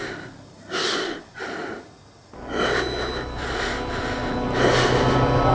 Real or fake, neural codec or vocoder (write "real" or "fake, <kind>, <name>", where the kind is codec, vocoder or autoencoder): real